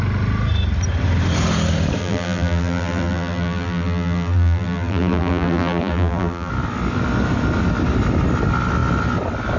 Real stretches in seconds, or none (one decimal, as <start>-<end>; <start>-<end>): 0.0-2.0; 6.5-9.6

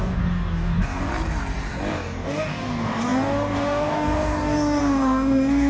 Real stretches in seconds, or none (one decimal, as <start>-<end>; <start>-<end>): 1.1-1.9

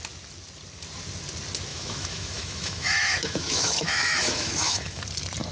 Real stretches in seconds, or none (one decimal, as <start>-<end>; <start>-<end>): 0.0-1.7; 5.0-5.5

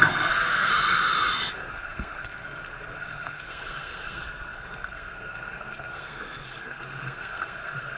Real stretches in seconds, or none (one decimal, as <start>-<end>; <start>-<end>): 0.7-1.5

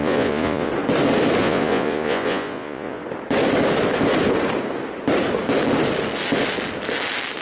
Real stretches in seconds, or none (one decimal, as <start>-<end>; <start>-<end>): 0.7-1.4; 3.0-7.4

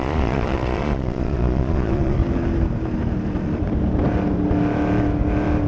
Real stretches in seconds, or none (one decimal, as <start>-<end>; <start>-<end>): 2.2-5.7